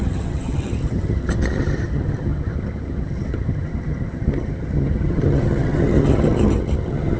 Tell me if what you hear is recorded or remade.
remade